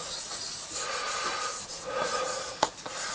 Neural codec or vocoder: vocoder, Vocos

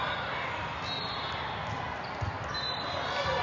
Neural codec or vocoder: none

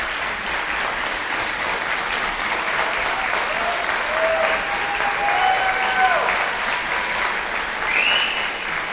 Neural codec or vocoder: none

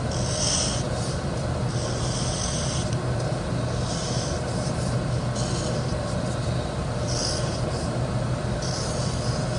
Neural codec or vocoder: none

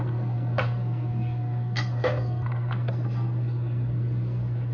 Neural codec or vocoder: codec, SNAC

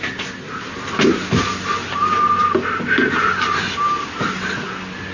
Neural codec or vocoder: none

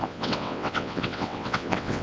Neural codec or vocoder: vocoder, WaveNeXt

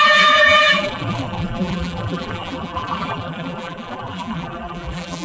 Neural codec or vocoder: vocoder, BigVGAN v2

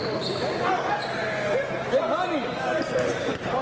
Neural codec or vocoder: none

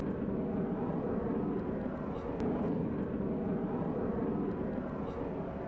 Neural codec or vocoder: none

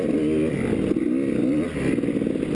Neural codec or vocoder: none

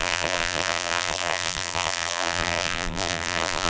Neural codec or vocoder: vocoder, BigVGAN v2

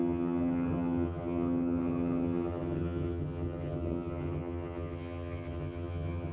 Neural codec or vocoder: vocoder, HiFi-GAN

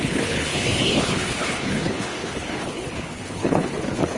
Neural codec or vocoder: codec, HILCodec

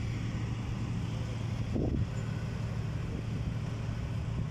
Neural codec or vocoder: none